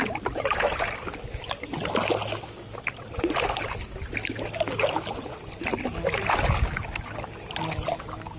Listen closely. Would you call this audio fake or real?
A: real